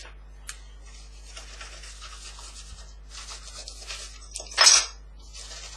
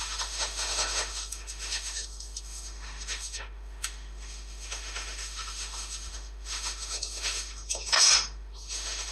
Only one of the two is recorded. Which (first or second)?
first